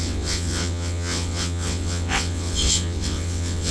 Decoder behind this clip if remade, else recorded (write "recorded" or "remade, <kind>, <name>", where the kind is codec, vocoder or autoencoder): remade, vocoder, WaveNeXt